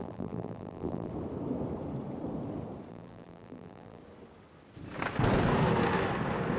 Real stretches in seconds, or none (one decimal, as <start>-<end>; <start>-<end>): 1.1-2.9; 4.0-6.6